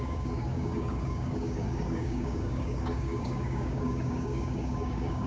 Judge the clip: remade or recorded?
remade